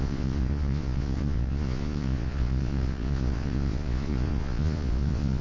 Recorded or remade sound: remade